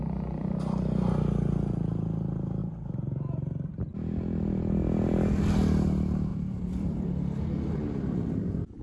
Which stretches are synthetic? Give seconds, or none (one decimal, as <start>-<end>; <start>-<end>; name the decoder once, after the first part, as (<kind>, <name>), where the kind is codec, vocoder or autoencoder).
2.6-5.4 (vocoder, BigVGAN v2); 6.3-8.8